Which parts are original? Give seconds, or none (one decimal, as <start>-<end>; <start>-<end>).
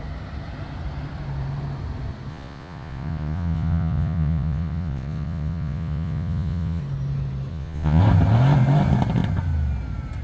0.0-2.3; 6.8-7.5; 8.0-10.2